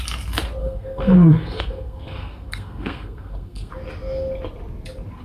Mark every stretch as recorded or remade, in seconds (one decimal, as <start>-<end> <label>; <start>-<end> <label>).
0.0-0.6 recorded; 0.6-3.7 remade; 3.7-5.2 recorded